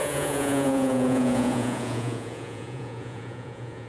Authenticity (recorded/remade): remade